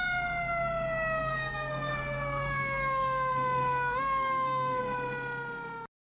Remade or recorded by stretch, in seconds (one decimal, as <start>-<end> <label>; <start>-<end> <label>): 0.0-1.2 recorded; 1.2-4.8 remade; 4.8-6.0 recorded